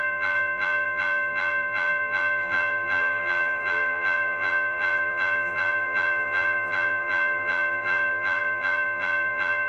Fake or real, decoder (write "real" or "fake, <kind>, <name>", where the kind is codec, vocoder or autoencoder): fake, vocoder, BigVGAN v2